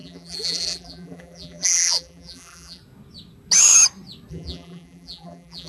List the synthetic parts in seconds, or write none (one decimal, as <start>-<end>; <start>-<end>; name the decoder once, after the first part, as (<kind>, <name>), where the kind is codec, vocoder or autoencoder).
0.0-2.8 (vocoder, BigVGAN v2); 4.3-5.7